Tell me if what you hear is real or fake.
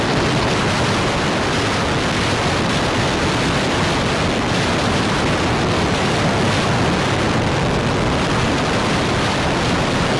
real